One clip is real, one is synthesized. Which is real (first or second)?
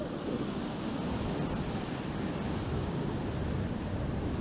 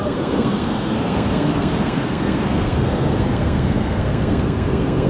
first